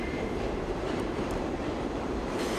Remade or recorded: remade